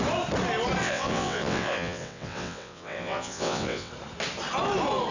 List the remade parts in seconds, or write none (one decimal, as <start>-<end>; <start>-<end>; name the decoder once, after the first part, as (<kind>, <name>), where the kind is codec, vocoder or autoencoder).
0.8-3.9 (vocoder, WaveNeXt)